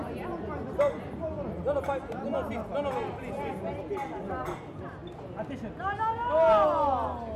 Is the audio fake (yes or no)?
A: no